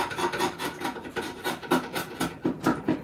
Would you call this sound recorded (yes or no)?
yes